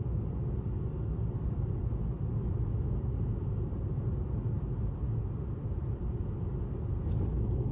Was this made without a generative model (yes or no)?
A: yes